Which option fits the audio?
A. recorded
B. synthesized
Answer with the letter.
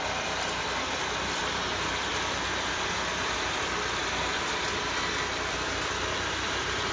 B